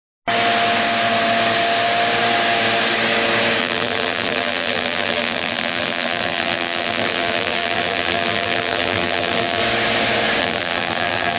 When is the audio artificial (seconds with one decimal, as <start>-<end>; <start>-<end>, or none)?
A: 3.6-9.6; 10.4-11.4